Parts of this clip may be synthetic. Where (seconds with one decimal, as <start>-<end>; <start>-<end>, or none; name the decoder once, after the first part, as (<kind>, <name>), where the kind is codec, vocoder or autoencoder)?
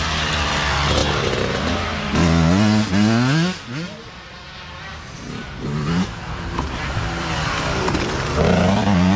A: 5.4-9.2 (vocoder, BigVGAN v2)